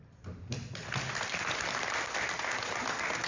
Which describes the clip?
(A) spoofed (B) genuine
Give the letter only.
B